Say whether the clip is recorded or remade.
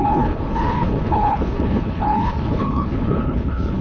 remade